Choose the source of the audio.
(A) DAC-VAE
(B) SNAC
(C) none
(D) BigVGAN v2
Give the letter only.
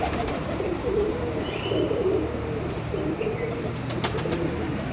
D